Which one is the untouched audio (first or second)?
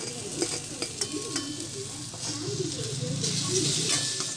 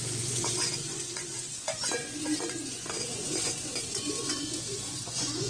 first